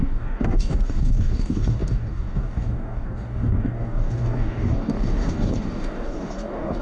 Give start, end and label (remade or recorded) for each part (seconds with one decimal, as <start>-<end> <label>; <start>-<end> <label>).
0.0-6.8 remade

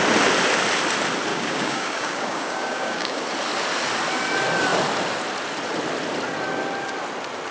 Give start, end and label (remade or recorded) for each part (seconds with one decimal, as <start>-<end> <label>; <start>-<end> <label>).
0.0-1.3 recorded; 1.3-3.2 remade; 3.2-7.5 recorded

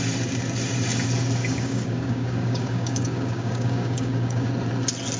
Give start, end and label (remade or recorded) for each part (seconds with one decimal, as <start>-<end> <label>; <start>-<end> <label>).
0.0-1.4 recorded; 1.4-4.5 remade; 4.5-5.2 recorded

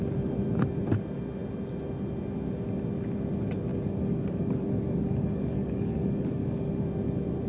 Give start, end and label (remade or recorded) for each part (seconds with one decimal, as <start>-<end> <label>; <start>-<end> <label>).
0.0-3.7 recorded; 3.7-6.8 remade; 6.8-7.5 recorded

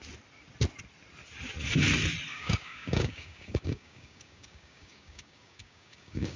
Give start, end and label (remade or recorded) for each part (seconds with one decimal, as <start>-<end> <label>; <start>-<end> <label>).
0.0-2.3 recorded; 2.3-6.4 remade

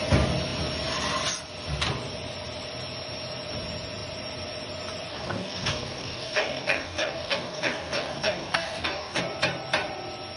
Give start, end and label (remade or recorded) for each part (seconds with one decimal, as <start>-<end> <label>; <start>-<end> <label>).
0.0-5.1 recorded; 5.1-9.2 remade; 9.2-10.4 recorded